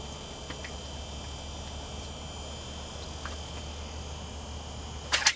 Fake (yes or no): no